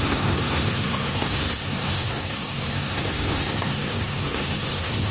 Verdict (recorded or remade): remade